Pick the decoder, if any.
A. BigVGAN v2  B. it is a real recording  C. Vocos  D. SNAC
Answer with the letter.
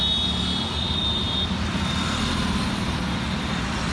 B